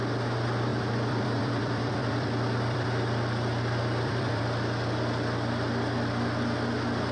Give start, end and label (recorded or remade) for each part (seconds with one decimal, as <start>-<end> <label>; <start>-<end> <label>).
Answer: 0.0-0.7 recorded; 0.7-4.4 remade; 4.4-7.1 recorded

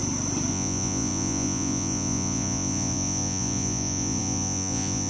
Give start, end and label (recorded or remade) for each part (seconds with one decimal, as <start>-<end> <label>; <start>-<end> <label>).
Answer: 0.0-0.5 recorded; 0.5-5.1 remade

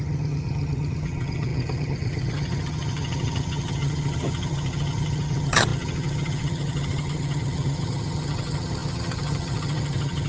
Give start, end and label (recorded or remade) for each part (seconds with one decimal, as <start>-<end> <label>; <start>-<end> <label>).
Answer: 0.0-10.3 remade

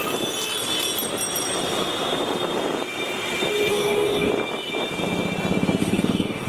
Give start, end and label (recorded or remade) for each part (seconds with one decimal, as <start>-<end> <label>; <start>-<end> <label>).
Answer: 0.0-3.7 recorded; 3.7-4.3 remade; 4.3-5.8 recorded; 5.8-6.5 remade

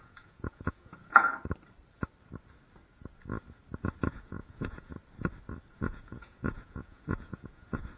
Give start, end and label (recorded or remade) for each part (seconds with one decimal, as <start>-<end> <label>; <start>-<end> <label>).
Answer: 0.0-1.3 remade; 1.3-4.1 recorded; 4.1-4.9 remade; 4.9-5.7 recorded; 5.7-8.0 remade

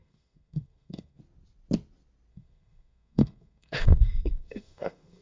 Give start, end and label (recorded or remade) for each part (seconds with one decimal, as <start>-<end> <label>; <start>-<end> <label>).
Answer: 0.0-1.2 remade; 1.2-2.3 recorded; 2.3-5.2 remade

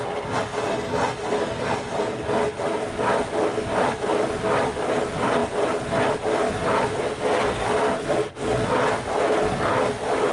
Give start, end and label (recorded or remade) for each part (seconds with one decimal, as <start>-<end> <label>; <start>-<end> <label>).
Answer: 0.0-10.3 recorded

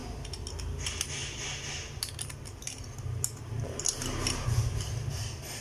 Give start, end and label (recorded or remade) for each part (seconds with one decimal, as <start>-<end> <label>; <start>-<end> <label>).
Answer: 0.0-5.6 recorded